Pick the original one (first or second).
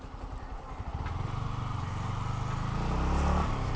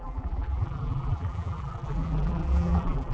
first